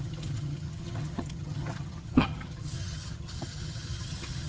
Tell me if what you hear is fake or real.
fake